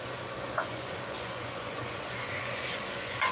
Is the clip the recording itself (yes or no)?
no